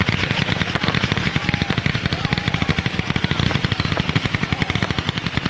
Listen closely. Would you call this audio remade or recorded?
recorded